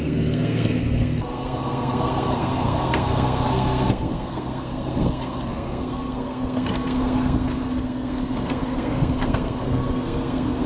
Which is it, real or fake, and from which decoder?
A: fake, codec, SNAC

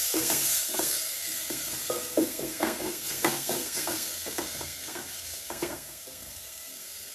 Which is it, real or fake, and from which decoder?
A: fake, codec, SNAC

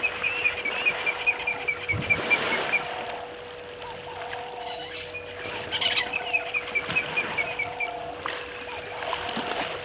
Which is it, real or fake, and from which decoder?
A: real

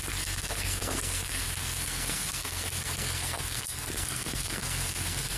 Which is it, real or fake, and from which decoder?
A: fake, codec, SNAC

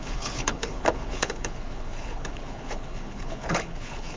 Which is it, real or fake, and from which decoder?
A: fake, codec, HILCodec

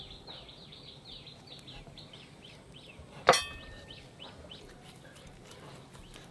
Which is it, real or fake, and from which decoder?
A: real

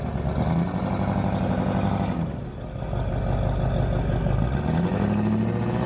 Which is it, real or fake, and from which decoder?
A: real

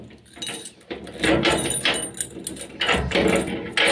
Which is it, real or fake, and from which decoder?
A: real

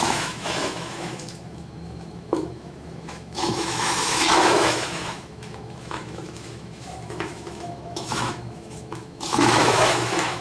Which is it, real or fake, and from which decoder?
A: fake, autoencoder, DAC-VAE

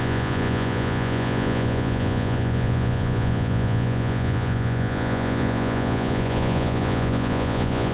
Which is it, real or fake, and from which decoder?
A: fake, vocoder, Vocos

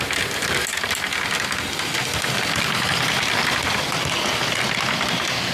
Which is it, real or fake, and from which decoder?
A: real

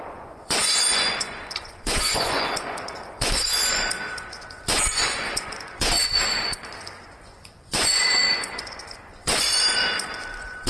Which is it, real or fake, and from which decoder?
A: fake, vocoder, Vocos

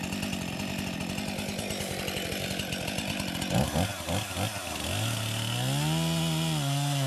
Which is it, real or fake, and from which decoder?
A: real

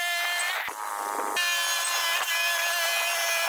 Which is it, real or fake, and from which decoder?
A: real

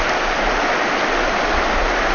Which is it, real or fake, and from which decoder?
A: real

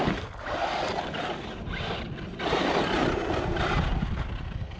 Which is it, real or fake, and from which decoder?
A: real